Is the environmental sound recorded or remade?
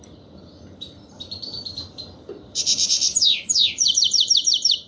remade